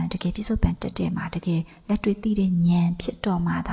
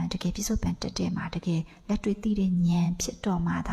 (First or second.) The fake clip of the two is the second